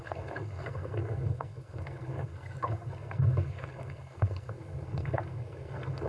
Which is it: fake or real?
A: fake